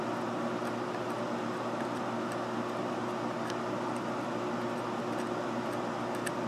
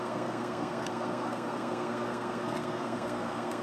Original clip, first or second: first